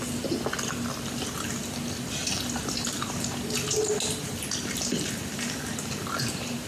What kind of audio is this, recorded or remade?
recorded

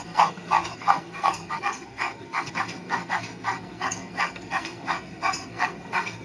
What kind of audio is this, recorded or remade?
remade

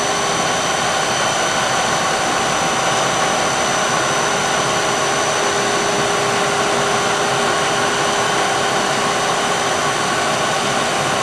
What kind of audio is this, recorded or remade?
recorded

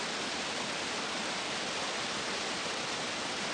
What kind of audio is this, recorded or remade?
recorded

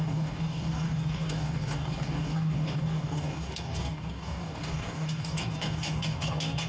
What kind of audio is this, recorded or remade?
remade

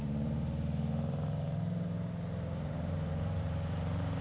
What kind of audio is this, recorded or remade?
remade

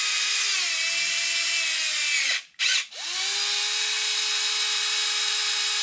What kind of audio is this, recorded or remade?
recorded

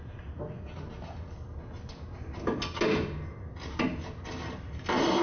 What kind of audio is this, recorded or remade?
recorded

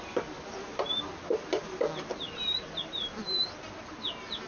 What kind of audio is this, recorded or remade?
recorded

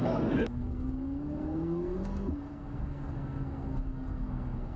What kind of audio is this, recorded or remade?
remade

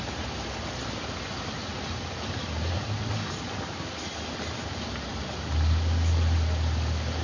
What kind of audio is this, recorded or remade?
recorded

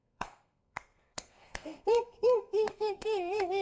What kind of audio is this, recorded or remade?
remade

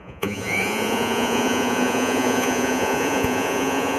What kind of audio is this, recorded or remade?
remade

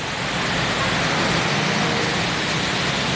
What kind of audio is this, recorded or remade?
recorded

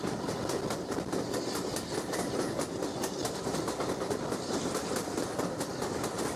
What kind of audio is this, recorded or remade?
recorded